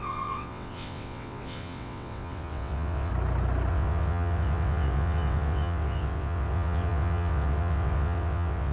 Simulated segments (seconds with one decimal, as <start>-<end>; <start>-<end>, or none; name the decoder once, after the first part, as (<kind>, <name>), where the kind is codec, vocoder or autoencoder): 0.0-3.1 (vocoder, WaveNeXt); 3.7-8.7